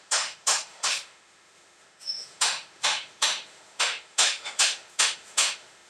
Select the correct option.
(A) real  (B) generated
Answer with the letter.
B